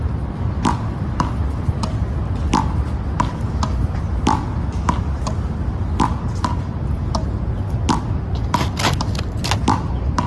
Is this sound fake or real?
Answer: real